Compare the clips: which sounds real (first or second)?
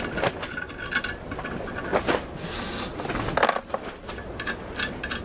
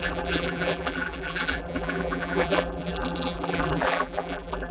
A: first